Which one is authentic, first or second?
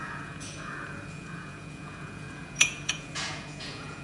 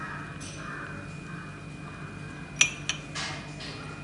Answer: second